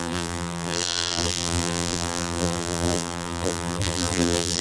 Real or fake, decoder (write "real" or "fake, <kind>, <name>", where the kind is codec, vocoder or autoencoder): fake, vocoder, BigVGAN v2